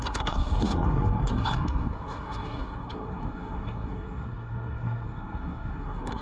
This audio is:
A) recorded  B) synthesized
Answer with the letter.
B